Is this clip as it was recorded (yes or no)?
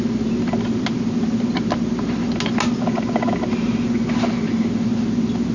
yes